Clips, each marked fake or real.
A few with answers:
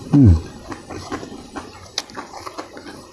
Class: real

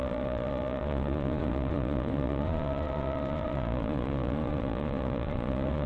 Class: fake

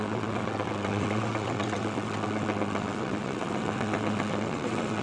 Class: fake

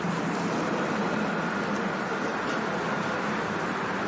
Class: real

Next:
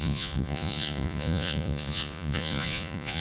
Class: fake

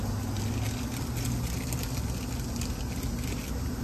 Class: real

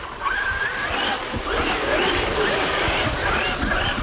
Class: real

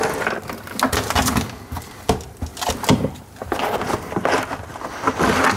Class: real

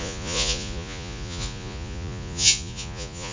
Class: fake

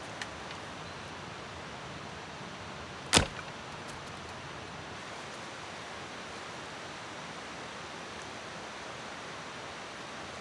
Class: real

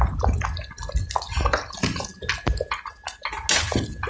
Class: real